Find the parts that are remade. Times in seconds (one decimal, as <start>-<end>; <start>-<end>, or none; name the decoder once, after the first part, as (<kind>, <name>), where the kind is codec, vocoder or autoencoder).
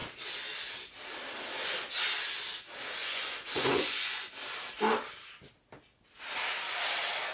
3.0-4.3 (vocoder, Vocos)